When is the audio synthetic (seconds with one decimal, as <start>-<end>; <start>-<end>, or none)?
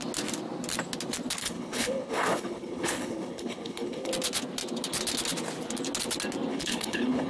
1.4-4.1; 6.5-7.3